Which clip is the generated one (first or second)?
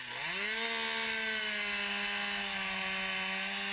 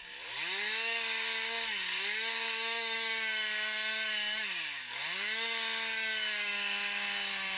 second